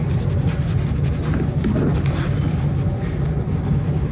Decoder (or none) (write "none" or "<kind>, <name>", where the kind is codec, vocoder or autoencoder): none